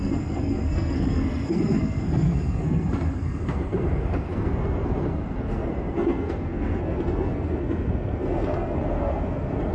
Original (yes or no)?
no